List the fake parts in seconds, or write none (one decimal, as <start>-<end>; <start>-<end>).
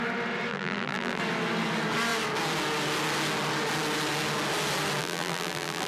0.5-1.2; 5.0-5.9